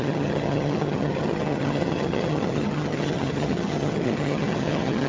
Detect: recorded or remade remade